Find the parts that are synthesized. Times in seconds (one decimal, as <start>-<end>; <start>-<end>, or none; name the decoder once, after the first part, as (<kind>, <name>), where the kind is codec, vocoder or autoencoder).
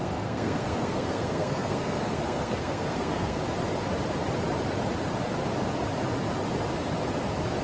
0.0-3.4 (codec, SNAC)